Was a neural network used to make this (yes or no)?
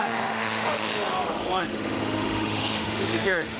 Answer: yes